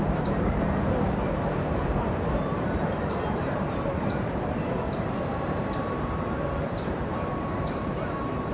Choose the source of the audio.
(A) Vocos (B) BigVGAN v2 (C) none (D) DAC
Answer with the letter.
B